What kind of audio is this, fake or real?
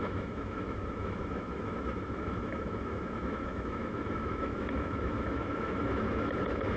fake